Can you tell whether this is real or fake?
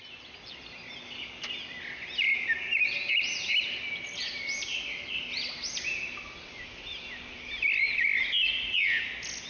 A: real